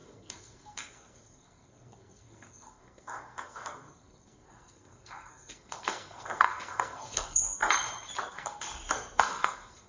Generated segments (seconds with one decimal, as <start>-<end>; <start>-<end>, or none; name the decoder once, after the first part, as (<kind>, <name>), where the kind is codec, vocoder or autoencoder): 0.0-7.6 (codec, SNAC); 8.3-9.9